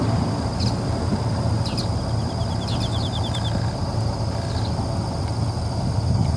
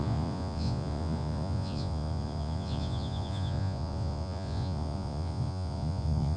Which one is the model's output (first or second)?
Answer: second